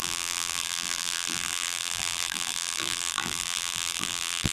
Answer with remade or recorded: remade